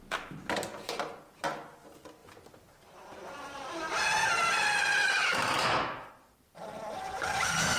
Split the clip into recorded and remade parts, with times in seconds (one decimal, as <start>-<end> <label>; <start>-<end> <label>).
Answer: 0.0-5.0 recorded; 5.0-6.1 remade; 6.1-7.8 recorded